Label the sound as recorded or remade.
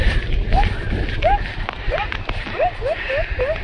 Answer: recorded